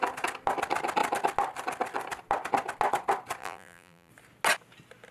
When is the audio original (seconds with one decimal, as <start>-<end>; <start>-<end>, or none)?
0.0-3.4; 4.1-5.1